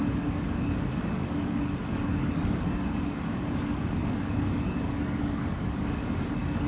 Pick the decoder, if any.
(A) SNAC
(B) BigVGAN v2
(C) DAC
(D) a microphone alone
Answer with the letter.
C